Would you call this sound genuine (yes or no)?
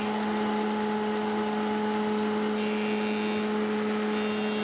yes